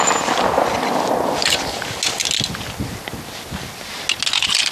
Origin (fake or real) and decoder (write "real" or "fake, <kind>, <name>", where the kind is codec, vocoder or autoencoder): real